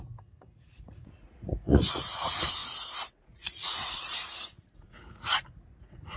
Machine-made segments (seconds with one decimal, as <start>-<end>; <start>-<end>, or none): 0.0-2.6; 3.1-6.2